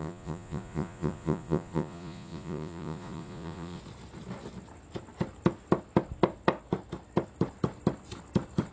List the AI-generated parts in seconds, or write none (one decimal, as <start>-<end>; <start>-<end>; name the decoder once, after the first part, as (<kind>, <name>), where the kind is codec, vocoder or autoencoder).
0.0-3.8 (vocoder, Vocos)